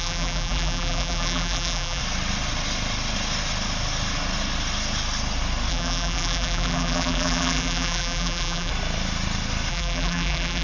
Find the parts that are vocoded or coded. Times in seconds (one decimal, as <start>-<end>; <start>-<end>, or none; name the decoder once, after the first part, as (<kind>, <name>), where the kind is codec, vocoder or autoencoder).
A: 0.0-2.0 (vocoder, BigVGAN v2); 5.7-8.7; 9.7-10.6